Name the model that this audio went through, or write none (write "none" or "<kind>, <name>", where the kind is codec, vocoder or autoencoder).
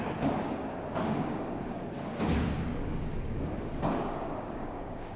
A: codec, DAC